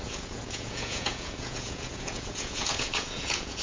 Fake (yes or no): yes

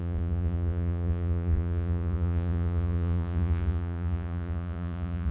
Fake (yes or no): yes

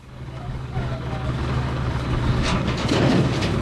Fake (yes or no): yes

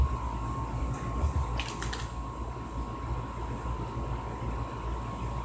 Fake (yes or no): no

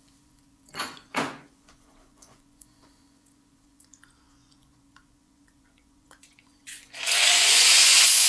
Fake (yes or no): yes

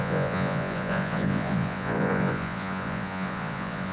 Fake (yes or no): yes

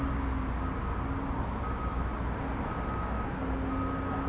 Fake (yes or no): no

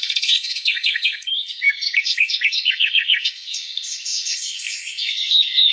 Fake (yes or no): yes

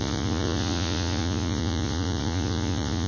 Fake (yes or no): yes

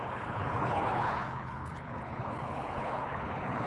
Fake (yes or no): yes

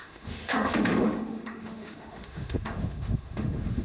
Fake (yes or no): yes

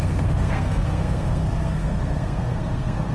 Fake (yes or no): yes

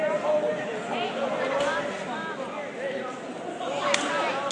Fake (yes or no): no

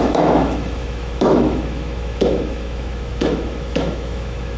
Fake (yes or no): yes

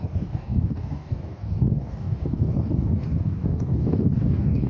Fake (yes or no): yes